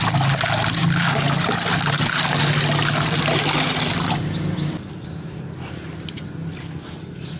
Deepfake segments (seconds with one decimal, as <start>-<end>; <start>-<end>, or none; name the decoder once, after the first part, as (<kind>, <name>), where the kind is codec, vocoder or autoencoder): none